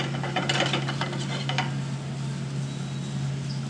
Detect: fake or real real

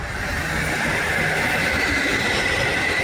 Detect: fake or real real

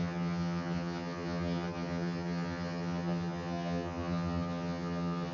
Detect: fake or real fake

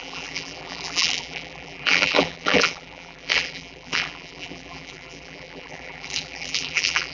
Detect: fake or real fake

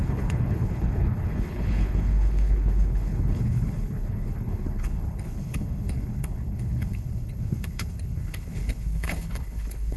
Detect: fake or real fake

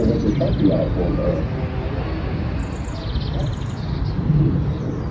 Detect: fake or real real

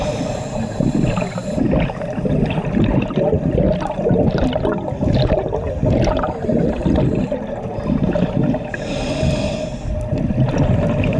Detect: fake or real real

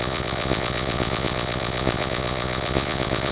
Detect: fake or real fake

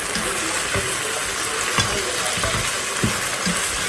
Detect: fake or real real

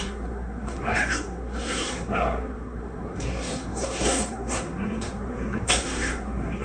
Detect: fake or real fake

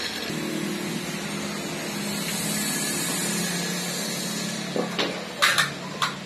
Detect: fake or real real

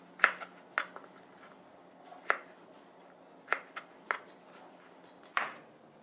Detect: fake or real real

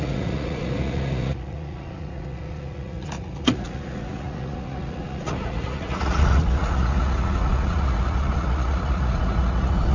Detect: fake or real fake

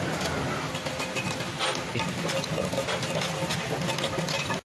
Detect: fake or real real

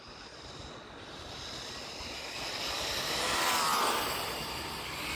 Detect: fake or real fake